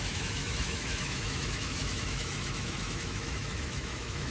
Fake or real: fake